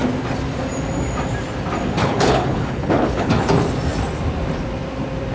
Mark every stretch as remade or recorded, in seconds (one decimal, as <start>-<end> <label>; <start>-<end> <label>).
0.0-2.0 recorded; 2.0-3.3 remade; 3.3-5.3 recorded